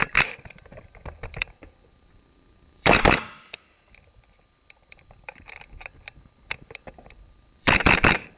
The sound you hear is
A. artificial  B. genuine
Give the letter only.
A